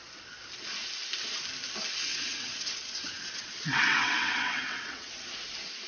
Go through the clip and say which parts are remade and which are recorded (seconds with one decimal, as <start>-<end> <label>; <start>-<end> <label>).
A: 0.0-2.1 recorded; 2.1-5.1 remade; 5.1-5.9 recorded

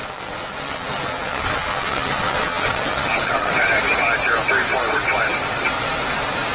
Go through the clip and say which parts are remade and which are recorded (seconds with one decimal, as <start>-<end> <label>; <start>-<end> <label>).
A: 0.0-3.5 remade; 3.5-6.5 recorded

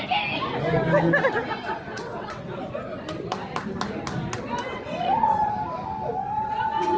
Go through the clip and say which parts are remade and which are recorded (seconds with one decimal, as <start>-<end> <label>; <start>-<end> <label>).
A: 0.0-1.9 recorded; 1.9-2.6 remade; 2.6-4.7 recorded; 4.7-5.5 remade; 5.5-7.0 recorded